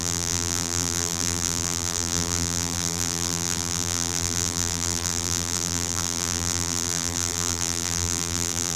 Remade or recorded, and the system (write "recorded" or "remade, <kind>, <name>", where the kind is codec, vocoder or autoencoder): remade, vocoder, BigVGAN v2